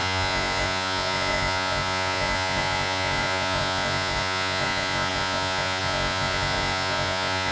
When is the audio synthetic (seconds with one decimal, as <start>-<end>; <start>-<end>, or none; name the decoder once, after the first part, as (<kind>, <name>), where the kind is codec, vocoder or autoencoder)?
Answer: 0.0-7.5 (vocoder, Vocos)